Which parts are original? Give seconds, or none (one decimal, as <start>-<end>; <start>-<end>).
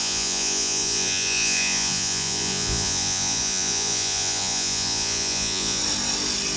5.8-6.6